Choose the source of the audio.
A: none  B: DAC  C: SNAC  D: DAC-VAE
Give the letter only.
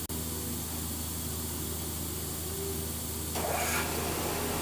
A